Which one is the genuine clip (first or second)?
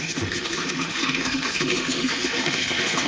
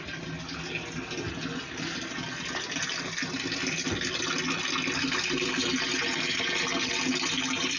second